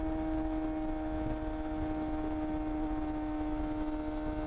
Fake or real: real